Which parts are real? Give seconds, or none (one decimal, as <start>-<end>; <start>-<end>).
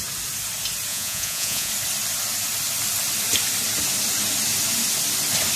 0.0-0.9; 1.7-5.6